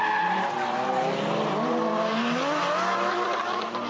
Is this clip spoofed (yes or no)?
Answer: no